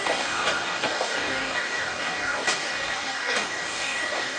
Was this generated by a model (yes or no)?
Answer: yes